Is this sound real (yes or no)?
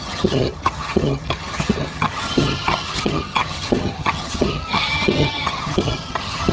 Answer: no